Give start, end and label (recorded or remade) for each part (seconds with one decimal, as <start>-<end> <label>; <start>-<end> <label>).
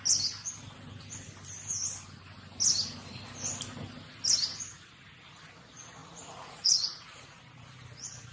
0.0-6.0 recorded; 6.0-7.4 remade; 7.4-8.3 recorded